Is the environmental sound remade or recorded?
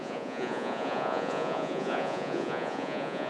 remade